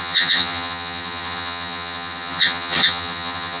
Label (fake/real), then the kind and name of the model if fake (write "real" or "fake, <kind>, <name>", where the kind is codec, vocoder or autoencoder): fake, vocoder, HiFi-GAN